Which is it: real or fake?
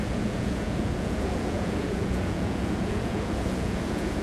fake